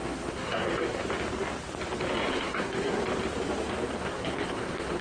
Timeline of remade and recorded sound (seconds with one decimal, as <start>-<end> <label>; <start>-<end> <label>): 0.0-1.0 remade; 1.0-2.3 recorded; 2.3-3.0 remade; 3.0-4.0 recorded; 4.0-5.0 remade